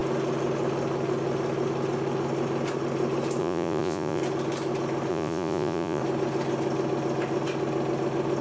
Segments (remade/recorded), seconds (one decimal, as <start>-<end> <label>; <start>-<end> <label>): 0.0-3.4 recorded; 3.4-4.2 remade; 4.2-5.1 recorded; 5.1-6.0 remade; 6.0-8.4 recorded